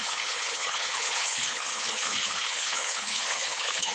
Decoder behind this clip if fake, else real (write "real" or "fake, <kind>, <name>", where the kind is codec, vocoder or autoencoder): fake, codec, HILCodec